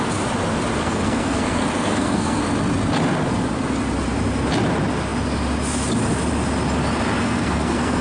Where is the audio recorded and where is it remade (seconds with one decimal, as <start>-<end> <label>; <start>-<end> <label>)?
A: 0.0-0.8 recorded; 0.8-2.4 remade; 2.4-7.2 recorded; 7.2-8.0 remade